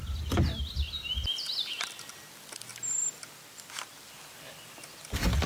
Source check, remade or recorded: recorded